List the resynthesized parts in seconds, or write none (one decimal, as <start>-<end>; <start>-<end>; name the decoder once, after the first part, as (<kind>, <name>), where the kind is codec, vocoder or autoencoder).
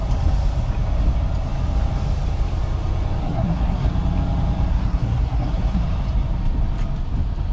3.2-3.9 (codec, SNAC); 4.7-5.8